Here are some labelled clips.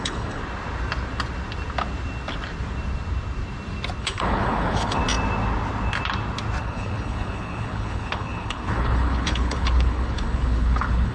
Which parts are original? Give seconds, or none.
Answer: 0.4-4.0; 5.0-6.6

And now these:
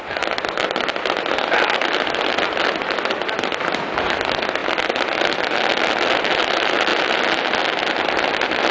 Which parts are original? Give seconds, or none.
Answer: 0.0-8.7

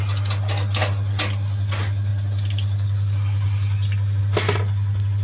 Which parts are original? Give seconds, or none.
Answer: 0.0-5.2

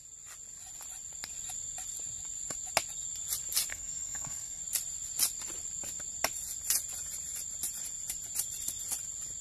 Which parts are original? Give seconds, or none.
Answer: 0.0-3.7; 4.6-9.4

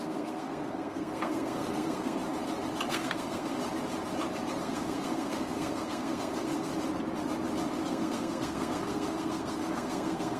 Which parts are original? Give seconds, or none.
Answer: 2.2-2.9; 3.6-4.6; 6.7-7.9